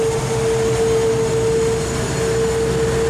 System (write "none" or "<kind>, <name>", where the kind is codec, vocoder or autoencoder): none